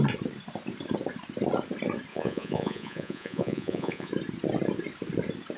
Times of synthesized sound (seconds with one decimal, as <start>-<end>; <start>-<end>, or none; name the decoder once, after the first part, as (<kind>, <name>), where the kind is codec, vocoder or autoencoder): 2.1-4.1 (vocoder, Vocos)

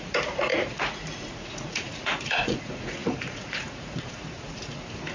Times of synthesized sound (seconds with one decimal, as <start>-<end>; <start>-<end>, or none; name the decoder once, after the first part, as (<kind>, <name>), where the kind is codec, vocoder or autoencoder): 0.0-5.1 (vocoder, Vocos)

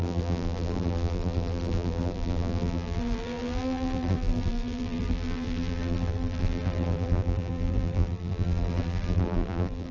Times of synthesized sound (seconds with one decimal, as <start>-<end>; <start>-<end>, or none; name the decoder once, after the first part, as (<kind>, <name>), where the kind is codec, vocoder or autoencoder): 0.0-9.9 (vocoder, BigVGAN v2)

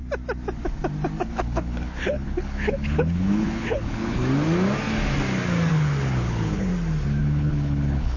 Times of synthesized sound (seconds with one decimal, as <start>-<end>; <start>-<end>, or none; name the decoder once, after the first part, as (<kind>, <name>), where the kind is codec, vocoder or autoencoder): 1.2-4.2 (codec, HILCodec); 5.7-6.7; 7.2-8.2

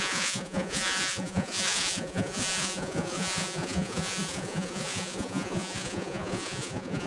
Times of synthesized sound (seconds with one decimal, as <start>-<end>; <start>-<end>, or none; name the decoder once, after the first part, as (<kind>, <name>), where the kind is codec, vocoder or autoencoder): 0.0-7.1 (vocoder, Vocos)

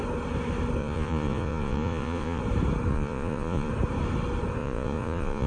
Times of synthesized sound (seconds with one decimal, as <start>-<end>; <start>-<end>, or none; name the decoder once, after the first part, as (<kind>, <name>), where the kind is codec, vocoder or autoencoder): 0.8-2.4 (vocoder, Vocos); 2.9-3.7; 4.6-5.5

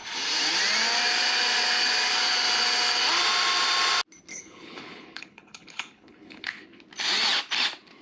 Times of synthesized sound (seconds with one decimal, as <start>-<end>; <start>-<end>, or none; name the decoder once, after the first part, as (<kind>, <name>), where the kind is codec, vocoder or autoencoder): 4.3-6.8 (codec, HILCodec)

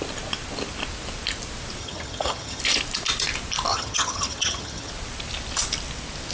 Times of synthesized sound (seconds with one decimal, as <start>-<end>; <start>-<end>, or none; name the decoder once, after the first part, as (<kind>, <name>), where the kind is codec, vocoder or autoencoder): 1.8-2.6 (vocoder, HiFi-GAN); 3.7-4.9